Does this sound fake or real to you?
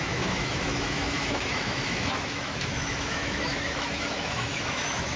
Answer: fake